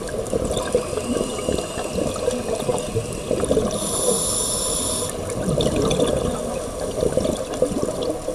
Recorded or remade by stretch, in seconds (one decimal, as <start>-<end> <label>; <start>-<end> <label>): 0.0-8.3 recorded